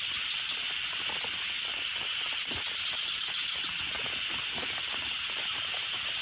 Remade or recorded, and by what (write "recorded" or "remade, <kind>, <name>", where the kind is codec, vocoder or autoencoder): recorded